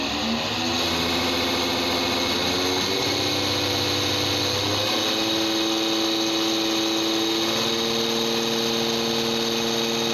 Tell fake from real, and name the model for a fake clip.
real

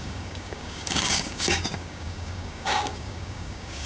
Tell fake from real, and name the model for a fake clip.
fake, codec, DAC